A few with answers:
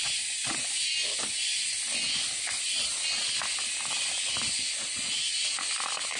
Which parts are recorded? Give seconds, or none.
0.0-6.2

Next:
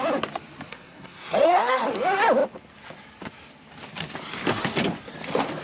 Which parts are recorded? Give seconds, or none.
0.0-0.7; 1.9-5.6

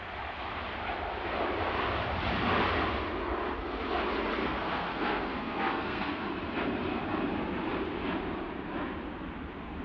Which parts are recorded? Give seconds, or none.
0.0-4.4; 6.2-9.8